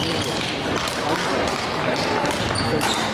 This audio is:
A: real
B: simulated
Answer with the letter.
A